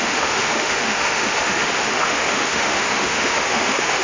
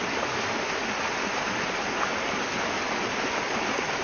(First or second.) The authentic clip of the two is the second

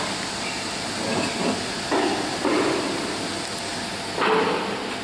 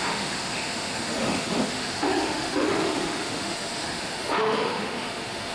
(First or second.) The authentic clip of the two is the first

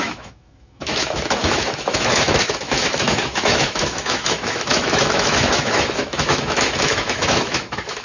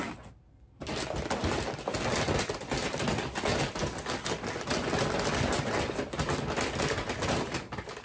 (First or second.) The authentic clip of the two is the second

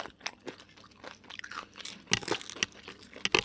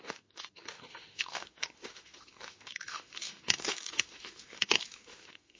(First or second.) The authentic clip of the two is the first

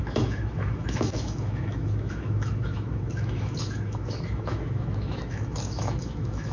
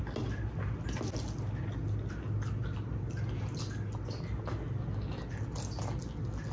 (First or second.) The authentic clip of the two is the second